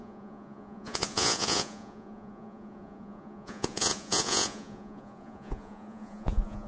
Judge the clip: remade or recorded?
remade